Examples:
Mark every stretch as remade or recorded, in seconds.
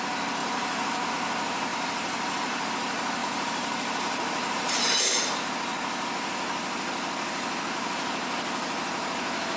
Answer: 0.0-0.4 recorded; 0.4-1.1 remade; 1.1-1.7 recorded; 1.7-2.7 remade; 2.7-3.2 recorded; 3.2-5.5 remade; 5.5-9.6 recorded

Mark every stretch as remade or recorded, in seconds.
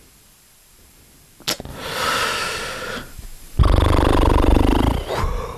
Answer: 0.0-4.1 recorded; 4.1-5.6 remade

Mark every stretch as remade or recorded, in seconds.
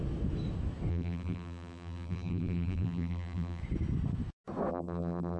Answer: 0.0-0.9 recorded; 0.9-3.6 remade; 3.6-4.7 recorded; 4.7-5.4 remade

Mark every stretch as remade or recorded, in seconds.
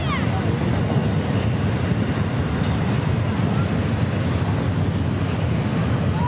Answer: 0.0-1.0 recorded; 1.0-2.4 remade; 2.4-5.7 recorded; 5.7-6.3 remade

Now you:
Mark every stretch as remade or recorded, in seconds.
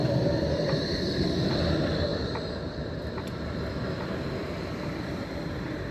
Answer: 0.0-0.7 remade; 0.7-2.1 recorded; 2.1-5.9 remade